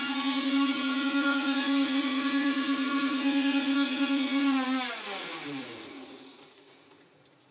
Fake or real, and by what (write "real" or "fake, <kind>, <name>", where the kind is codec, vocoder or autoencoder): fake, vocoder, Vocos